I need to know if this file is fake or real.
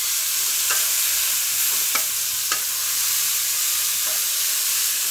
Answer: fake